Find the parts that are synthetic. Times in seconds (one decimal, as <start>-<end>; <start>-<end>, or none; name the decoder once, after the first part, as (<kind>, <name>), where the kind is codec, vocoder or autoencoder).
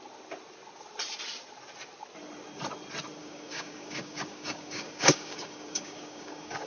3.2-6.7 (codec, DAC)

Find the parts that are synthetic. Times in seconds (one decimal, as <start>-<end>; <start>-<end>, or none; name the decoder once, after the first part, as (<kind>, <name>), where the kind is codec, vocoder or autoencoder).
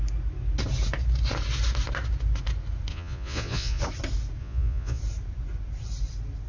2.9-3.8 (vocoder, Vocos); 4.4-5.0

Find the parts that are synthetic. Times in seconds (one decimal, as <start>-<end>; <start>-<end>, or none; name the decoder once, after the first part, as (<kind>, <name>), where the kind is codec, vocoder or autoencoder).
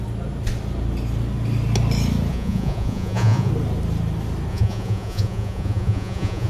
2.3-3.5 (vocoder, Vocos); 4.5-6.5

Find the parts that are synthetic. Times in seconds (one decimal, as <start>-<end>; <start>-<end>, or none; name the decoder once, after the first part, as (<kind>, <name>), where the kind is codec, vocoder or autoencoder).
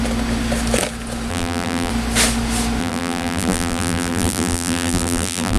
1.3-1.9 (vocoder, BigVGAN v2); 2.8-5.6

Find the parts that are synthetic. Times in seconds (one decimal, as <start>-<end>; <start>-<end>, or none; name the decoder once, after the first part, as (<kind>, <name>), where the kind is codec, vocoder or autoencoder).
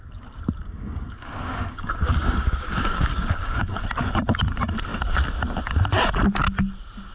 0.6-3.8 (codec, DAC)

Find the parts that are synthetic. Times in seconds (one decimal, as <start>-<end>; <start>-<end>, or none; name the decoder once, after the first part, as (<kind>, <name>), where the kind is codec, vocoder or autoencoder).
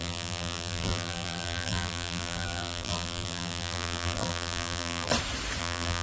0.0-5.1 (vocoder, BigVGAN v2); 5.6-6.0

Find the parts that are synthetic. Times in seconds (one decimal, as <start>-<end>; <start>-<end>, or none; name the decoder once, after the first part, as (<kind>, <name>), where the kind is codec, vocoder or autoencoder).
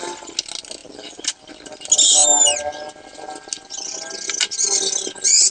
none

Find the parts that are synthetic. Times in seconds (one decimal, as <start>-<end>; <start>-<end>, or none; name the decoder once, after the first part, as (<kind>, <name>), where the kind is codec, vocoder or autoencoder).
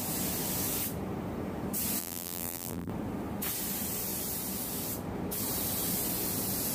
2.0-2.9 (vocoder, BigVGAN v2)